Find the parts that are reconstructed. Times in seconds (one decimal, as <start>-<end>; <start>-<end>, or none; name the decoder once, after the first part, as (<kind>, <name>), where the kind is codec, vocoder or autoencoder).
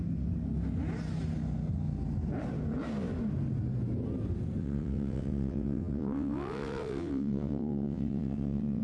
4.6-8.8 (vocoder, WaveNeXt)